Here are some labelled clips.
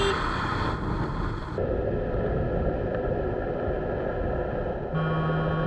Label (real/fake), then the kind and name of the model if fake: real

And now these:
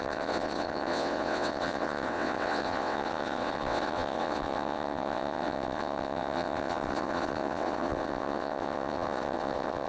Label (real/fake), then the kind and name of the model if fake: fake, vocoder, WaveNeXt